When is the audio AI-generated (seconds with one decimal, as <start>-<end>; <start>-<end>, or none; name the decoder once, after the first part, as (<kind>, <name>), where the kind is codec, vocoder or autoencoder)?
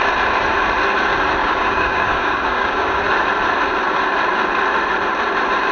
1.4-3.0 (codec, DAC)